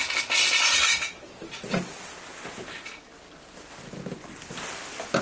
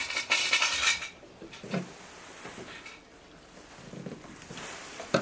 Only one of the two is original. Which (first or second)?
first